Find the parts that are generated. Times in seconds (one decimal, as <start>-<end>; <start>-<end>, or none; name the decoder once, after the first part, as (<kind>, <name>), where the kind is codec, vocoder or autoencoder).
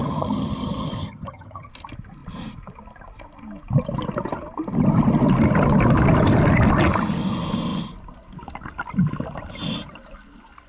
0.0-1.7 (vocoder, HiFi-GAN)